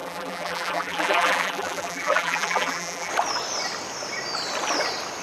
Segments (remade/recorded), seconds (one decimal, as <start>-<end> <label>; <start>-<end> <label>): 0.0-3.1 remade; 3.1-5.2 recorded